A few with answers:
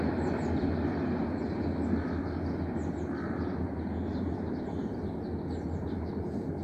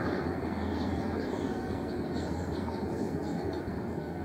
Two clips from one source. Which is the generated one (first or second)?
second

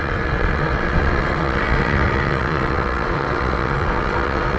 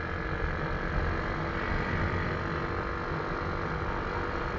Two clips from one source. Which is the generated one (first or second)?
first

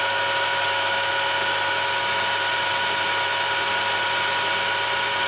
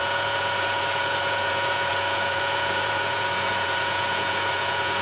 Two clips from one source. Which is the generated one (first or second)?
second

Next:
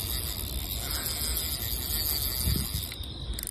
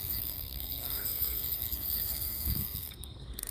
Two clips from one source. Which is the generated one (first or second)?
second